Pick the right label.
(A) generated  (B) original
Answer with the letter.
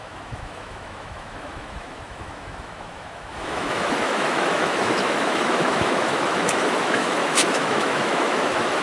A